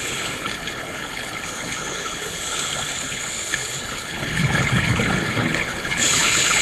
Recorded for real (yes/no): no